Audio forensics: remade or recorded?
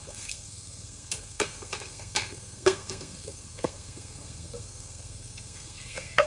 remade